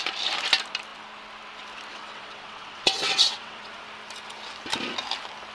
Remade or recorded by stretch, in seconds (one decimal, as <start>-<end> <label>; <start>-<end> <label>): 0.0-1.9 recorded; 1.9-3.8 remade; 3.8-5.5 recorded